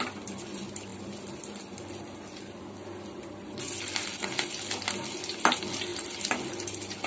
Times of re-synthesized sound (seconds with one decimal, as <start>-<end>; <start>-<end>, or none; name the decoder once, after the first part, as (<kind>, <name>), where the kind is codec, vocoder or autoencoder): none